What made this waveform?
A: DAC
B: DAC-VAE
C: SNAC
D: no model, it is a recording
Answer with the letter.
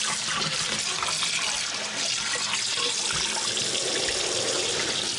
D